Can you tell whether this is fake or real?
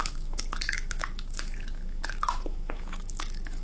fake